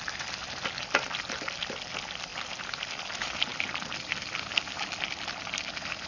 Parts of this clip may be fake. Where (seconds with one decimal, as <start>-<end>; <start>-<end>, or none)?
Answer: none